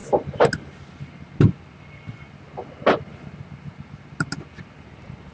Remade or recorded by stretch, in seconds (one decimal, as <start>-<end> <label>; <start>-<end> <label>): 0.0-5.3 recorded